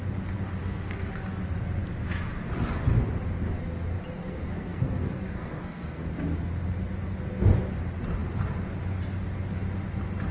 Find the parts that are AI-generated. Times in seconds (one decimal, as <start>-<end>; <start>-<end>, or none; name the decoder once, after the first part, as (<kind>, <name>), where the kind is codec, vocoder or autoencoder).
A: 0.6-1.1 (codec, SNAC); 4.2-6.1